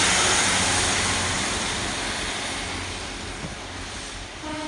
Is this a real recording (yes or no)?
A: yes